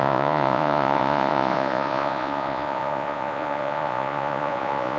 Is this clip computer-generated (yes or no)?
yes